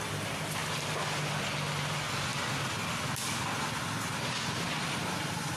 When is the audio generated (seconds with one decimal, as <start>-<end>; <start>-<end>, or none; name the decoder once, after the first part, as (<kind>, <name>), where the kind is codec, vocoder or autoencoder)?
none